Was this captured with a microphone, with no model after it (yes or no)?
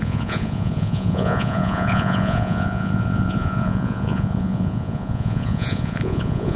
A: no